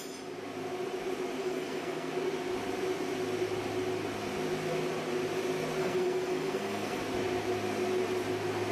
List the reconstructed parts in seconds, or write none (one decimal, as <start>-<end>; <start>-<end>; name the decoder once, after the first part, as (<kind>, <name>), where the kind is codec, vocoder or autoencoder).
1.4-2.1 (codec, SNAC); 5.8-7.0